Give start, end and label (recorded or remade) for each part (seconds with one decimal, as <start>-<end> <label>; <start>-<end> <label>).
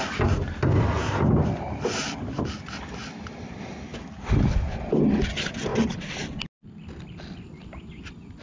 0.0-8.4 recorded